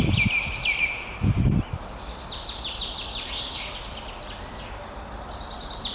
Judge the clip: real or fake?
real